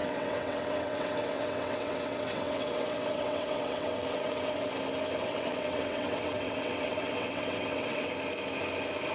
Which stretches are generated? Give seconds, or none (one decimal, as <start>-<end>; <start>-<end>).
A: 0.0-4.7; 5.2-8.1